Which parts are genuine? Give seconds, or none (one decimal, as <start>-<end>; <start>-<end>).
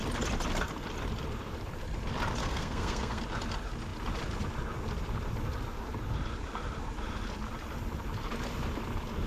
0.0-2.4; 3.2-9.3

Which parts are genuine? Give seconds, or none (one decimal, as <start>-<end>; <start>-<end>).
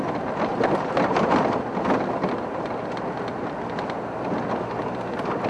0.0-5.5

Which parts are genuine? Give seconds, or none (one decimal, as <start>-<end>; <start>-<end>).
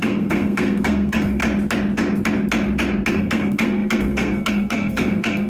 1.4-3.1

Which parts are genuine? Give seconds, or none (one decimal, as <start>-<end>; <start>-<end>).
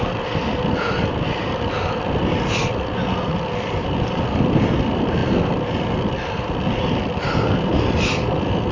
0.0-8.7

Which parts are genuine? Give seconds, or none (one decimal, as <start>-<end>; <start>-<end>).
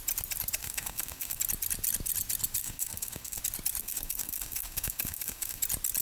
0.0-0.6; 1.4-2.6; 3.4-3.8; 5.6-6.0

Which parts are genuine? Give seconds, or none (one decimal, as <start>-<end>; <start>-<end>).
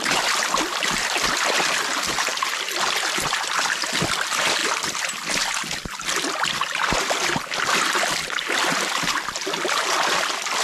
0.0-10.6